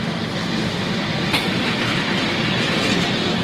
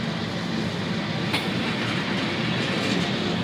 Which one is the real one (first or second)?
second